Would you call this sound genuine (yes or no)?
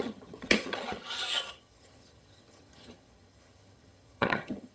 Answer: no